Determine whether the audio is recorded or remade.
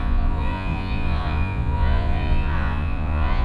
remade